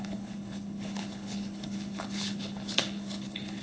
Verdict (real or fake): fake